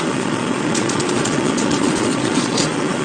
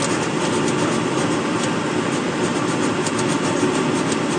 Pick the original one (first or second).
second